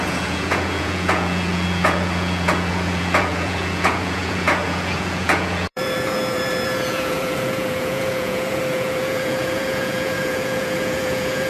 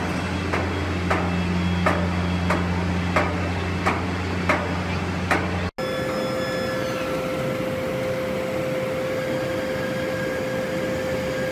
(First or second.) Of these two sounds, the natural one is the second